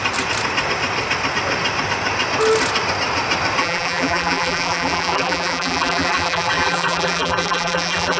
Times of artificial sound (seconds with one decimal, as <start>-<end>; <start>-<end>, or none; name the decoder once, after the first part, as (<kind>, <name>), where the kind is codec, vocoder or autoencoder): 3.6-8.2 (vocoder, BigVGAN v2)